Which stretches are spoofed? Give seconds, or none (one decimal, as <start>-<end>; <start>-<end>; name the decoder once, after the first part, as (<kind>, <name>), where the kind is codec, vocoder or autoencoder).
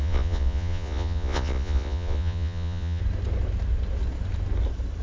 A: 0.0-3.0 (vocoder, Vocos)